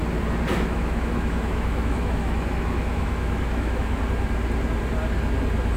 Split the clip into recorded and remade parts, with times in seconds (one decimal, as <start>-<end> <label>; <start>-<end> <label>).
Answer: 0.0-0.5 recorded; 0.5-4.0 remade; 4.0-5.8 recorded